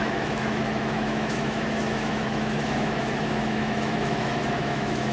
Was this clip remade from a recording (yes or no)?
yes